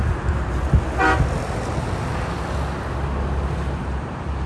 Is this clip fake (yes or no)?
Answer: no